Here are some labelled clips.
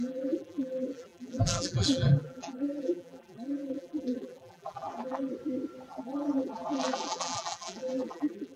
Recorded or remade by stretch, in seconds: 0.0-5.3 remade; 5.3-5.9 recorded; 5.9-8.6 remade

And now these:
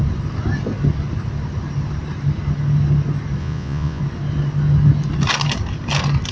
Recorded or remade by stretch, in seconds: 0.0-3.4 recorded; 3.4-4.0 remade; 4.0-6.3 recorded

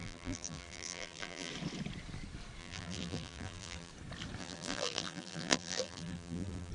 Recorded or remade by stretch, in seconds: 0.0-1.5 remade; 1.5-2.6 recorded; 2.6-3.9 remade; 3.9-4.4 recorded; 4.4-6.7 remade

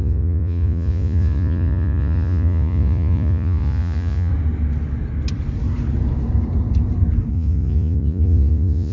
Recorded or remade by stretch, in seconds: 0.0-4.3 remade; 4.3-7.3 recorded; 7.3-8.9 remade

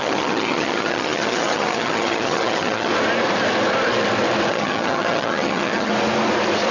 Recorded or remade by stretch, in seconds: 0.0-2.9 remade; 2.9-4.5 recorded; 4.5-5.9 remade; 5.9-6.7 recorded